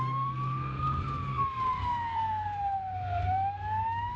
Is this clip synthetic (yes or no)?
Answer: yes